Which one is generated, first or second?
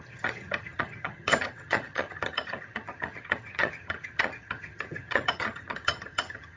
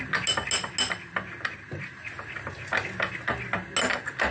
first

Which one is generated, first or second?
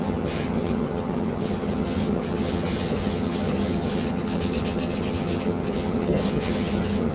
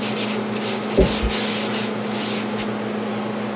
first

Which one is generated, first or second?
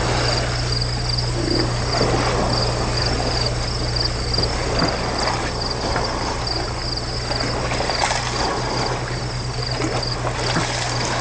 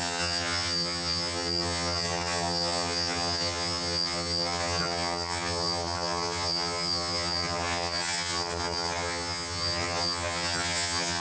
second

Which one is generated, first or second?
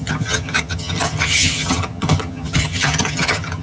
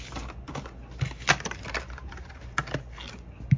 first